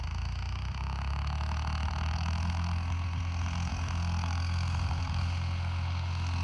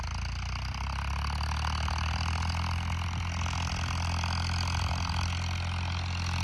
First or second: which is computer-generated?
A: first